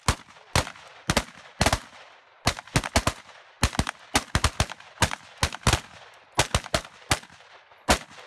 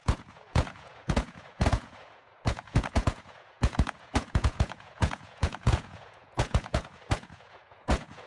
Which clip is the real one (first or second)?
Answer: first